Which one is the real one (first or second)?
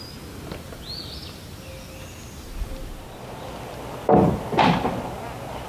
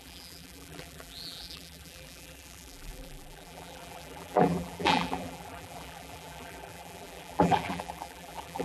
first